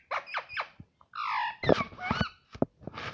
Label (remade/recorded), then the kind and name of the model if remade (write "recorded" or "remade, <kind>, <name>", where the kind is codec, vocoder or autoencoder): recorded